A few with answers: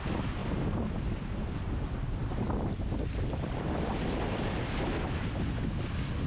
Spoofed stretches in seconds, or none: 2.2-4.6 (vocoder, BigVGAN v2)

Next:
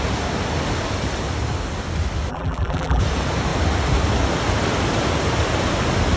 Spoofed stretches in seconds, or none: 2.3-3.0 (vocoder, BigVGAN v2)

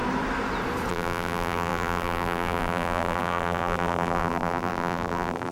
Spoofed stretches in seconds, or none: 0.9-5.5 (vocoder, BigVGAN v2)